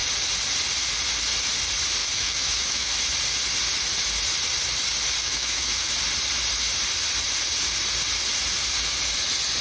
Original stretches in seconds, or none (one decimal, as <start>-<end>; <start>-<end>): 0.0-2.0; 2.9-5.2; 5.9-9.6